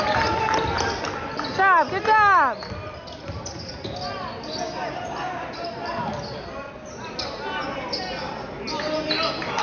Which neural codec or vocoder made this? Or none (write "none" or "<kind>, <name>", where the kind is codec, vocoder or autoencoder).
none